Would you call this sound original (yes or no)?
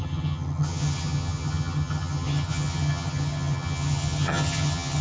no